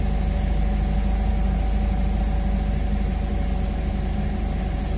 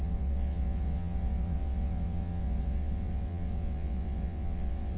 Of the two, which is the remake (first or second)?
second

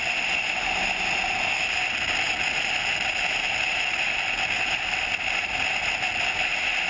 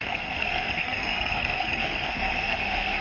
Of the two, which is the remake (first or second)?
second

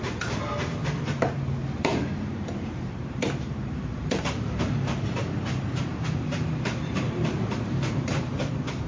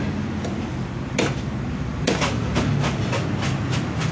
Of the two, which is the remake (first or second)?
first